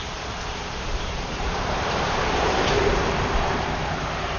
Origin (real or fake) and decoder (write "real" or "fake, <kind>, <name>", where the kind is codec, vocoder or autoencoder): fake, vocoder, BigVGAN v2